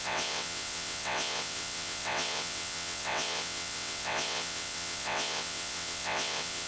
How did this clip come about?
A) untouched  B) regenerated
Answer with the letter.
B